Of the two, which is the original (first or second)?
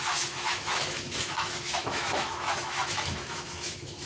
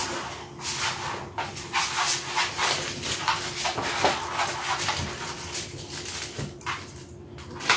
second